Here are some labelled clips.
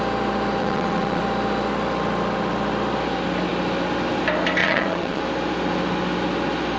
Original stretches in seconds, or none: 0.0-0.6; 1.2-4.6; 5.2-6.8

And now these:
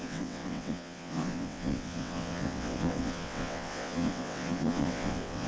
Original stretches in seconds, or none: none

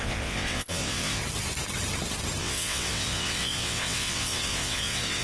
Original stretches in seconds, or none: 1.2-2.4

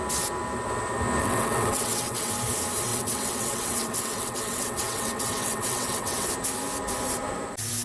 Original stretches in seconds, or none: 0.0-1.2; 2.3-2.9; 6.3-7.8

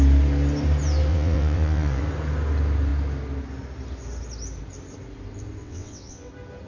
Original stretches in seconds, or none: 0.0-1.1; 2.0-5.6; 6.3-6.7

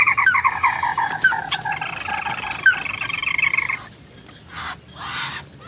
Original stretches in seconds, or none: 0.0-5.7

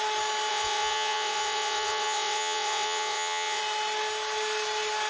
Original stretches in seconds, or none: 0.0-0.5; 3.6-5.1

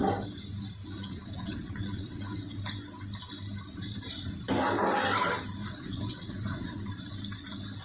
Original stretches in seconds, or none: 0.0-0.8; 2.6-5.6; 6.8-7.8